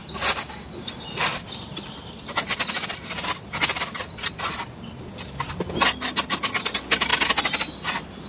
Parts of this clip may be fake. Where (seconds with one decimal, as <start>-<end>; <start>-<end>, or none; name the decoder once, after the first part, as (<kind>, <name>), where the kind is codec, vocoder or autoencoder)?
none